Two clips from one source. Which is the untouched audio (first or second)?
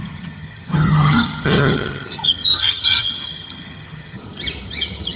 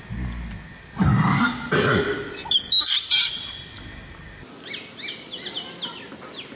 second